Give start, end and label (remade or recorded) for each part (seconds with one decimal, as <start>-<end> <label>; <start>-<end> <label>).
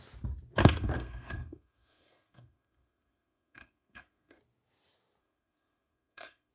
0.0-0.6 recorded; 0.6-4.4 remade; 4.4-5.2 recorded; 5.2-6.5 remade